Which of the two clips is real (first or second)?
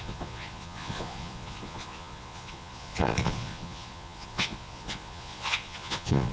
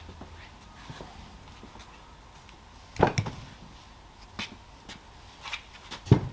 second